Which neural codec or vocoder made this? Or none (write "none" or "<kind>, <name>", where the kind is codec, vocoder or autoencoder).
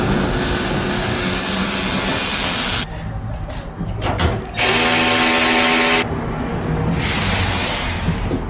none